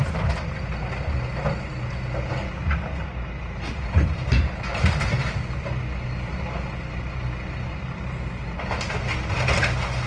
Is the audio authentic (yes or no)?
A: yes